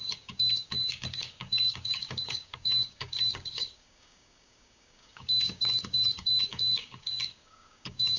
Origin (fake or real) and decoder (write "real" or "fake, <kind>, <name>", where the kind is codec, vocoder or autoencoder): fake, codec, DAC